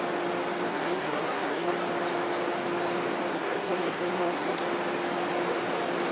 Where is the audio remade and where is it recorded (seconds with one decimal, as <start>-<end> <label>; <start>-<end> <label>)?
0.0-0.7 recorded; 0.7-1.7 remade; 1.7-3.3 recorded; 3.3-4.6 remade; 4.6-6.1 recorded